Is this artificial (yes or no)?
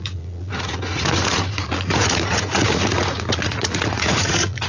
yes